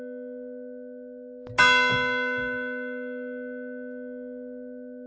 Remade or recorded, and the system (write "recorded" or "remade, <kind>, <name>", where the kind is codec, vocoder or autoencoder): recorded